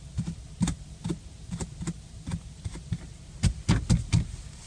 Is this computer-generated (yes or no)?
no